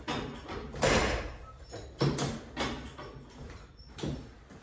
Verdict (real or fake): real